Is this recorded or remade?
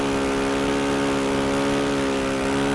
recorded